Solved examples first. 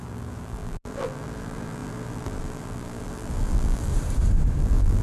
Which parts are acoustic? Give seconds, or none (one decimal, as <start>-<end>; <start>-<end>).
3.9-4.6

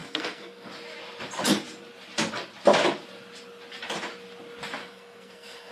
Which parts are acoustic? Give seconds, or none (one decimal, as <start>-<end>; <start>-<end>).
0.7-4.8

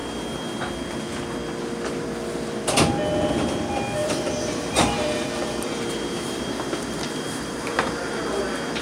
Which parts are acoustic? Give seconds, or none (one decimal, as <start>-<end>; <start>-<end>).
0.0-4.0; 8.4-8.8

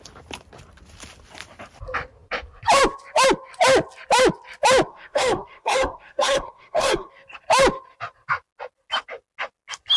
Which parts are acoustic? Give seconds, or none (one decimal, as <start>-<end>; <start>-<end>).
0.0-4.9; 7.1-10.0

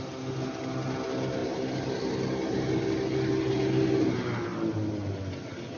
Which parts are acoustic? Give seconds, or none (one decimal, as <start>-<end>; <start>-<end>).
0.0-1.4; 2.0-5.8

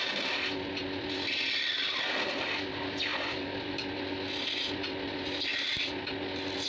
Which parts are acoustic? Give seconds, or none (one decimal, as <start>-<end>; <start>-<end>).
0.0-6.7